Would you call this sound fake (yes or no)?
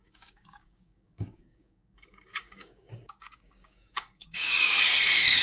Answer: yes